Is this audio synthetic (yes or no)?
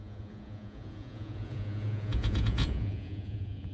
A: yes